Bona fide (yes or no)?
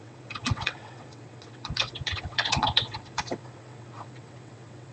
no